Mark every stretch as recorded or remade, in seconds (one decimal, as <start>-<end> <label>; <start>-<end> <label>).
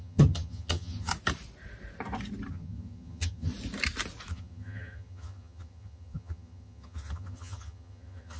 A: 0.0-1.1 remade; 1.1-2.5 recorded; 2.5-3.5 remade; 3.5-4.3 recorded; 4.3-8.4 remade